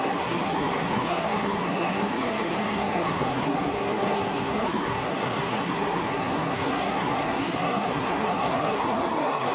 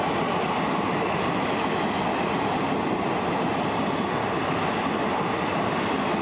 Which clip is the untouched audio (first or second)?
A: second